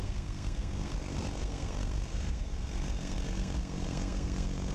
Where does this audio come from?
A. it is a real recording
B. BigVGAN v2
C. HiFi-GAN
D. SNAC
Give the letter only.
D